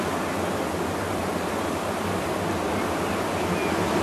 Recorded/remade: recorded